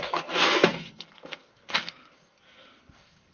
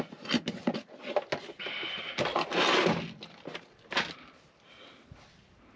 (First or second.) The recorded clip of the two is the second